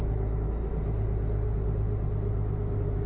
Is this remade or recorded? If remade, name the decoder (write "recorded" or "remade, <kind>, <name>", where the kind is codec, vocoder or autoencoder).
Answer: recorded